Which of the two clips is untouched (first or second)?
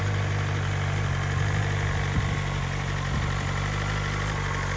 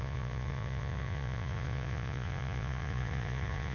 first